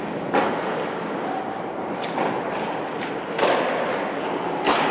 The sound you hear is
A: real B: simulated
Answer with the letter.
A